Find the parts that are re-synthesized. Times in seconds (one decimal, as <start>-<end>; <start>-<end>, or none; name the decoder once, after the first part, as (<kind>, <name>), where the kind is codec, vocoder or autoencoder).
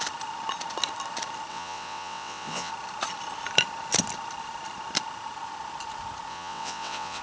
1.5-2.7 (vocoder, WaveNeXt); 6.3-7.2